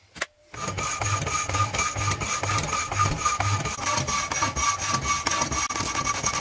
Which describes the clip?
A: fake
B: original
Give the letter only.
B